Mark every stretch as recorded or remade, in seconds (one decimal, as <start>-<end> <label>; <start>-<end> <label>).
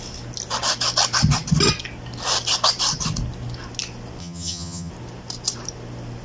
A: 0.0-4.2 recorded; 4.2-4.9 remade; 4.9-6.2 recorded